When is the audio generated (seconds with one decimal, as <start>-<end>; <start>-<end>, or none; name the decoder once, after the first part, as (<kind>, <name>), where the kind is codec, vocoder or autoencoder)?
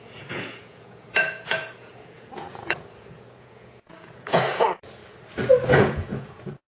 0.0-5.0 (vocoder, Vocos); 5.7-6.7